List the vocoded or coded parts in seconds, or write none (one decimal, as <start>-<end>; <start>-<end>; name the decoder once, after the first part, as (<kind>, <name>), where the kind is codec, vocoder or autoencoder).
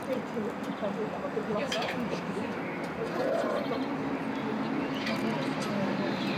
1.5-2.6 (autoencoder, DAC-VAE)